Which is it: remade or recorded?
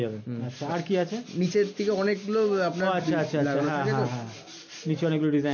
recorded